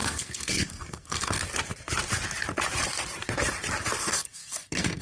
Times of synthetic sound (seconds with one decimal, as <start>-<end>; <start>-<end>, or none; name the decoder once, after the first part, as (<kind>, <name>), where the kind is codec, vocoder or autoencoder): 0.0-1.4 (codec, SNAC); 4.0-5.0